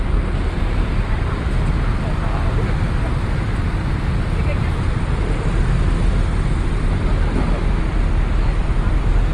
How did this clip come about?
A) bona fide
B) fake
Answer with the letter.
A